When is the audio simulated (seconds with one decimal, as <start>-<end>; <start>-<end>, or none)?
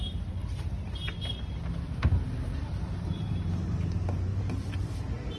4.3-5.4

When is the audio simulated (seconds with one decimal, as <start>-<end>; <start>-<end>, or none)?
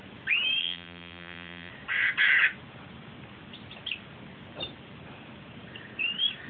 0.6-1.7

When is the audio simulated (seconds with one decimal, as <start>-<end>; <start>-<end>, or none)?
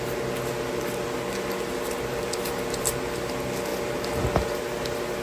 none